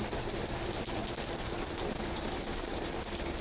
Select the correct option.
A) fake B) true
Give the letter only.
B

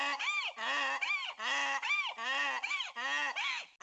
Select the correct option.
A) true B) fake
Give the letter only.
A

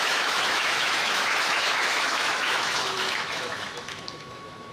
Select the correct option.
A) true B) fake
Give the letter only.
B